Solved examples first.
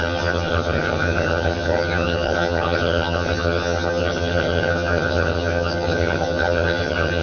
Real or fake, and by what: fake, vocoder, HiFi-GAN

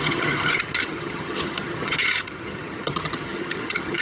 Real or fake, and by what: fake, vocoder, HiFi-GAN